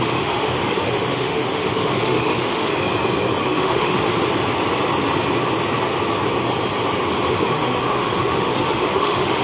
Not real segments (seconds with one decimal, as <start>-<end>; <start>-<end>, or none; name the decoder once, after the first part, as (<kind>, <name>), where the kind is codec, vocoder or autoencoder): 0.0-2.7 (autoencoder, DAC-VAE); 3.4-4.1; 7.3-9.4